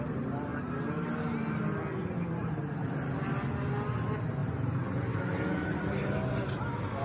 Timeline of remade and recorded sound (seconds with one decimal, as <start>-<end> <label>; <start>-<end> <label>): 0.0-2.4 recorded; 2.4-3.2 remade; 3.2-4.4 recorded; 4.4-6.5 remade; 6.5-7.0 recorded